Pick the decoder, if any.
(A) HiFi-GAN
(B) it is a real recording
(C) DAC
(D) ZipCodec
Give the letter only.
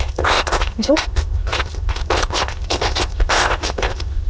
D